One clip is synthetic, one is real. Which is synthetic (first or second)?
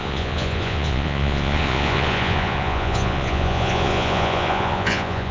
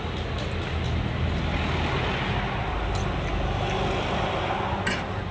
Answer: first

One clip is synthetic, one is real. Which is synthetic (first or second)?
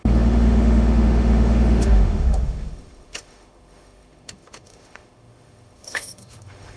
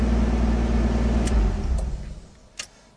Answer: first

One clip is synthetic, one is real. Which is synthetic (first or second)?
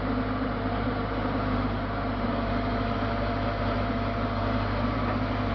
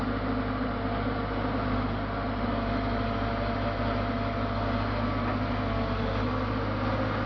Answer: first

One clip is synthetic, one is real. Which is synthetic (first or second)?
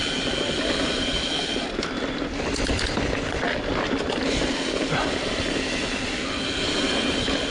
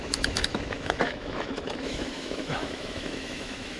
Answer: second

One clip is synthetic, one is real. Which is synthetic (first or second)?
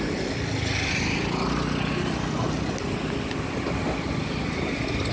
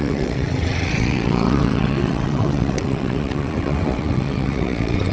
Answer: second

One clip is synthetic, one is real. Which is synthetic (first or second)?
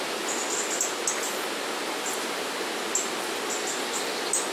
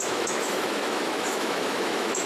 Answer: second